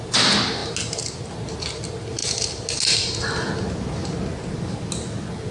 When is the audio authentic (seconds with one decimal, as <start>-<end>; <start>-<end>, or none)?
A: 0.0-5.5